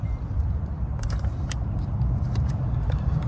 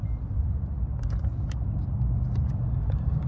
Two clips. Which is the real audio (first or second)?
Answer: second